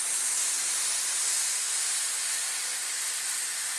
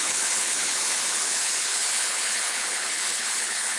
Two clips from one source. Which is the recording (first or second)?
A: first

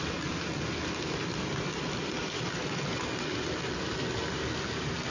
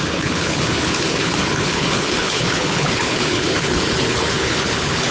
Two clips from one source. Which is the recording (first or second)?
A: first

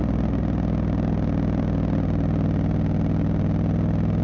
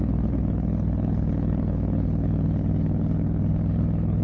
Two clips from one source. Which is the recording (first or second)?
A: first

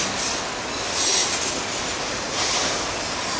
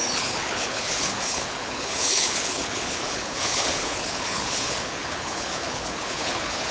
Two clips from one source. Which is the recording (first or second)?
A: first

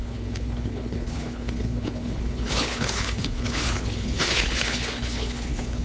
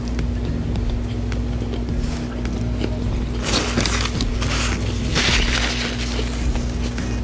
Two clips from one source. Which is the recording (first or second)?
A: second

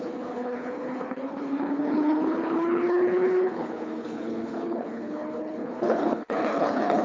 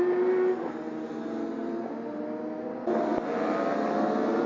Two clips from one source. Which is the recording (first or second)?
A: second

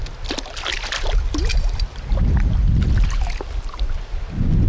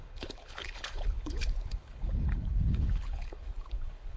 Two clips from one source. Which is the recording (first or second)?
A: first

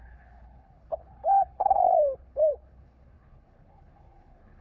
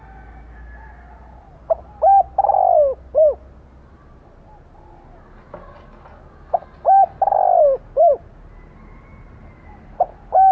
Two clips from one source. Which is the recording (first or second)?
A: second